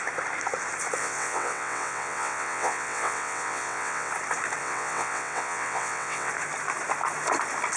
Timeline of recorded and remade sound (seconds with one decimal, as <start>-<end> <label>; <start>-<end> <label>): 0.0-1.0 recorded; 1.0-4.1 remade; 4.1-4.6 recorded; 4.6-6.3 remade; 6.3-7.8 recorded

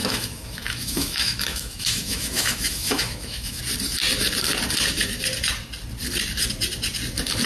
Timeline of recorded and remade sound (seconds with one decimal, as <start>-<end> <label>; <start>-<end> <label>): 0.0-3.6 remade; 3.6-7.5 recorded

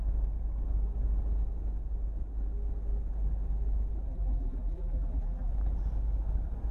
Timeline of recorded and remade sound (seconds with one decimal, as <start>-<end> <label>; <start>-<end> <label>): 0.0-4.1 recorded; 4.1-5.5 remade; 5.5-6.7 recorded

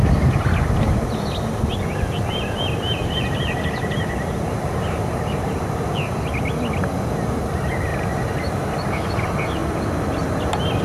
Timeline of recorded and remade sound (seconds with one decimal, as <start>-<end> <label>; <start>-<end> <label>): 0.0-3.0 recorded; 3.0-5.6 remade; 5.6-10.8 recorded

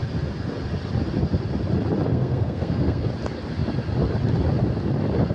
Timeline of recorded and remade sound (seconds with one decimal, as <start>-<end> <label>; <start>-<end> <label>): 0.0-2.1 recorded; 2.1-3.1 remade; 3.1-5.3 recorded

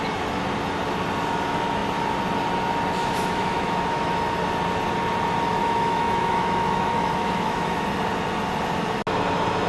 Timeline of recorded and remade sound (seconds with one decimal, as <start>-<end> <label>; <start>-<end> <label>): 0.0-3.0 recorded; 3.0-4.1 remade; 4.1-5.6 recorded; 5.6-7.9 remade; 7.9-9.7 recorded

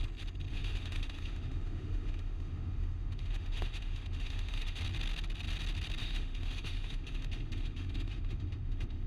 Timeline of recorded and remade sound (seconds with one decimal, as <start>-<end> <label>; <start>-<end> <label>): 0.0-0.5 recorded; 0.5-4.8 remade; 4.8-6.0 recorded; 6.0-9.1 remade

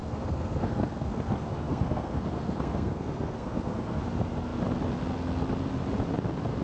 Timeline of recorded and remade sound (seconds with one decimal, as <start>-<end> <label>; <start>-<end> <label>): 0.0-4.0 remade; 4.0-6.6 recorded